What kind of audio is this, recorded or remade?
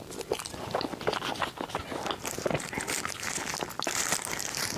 recorded